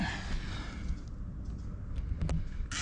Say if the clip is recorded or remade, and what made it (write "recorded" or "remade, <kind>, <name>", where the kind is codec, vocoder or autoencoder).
recorded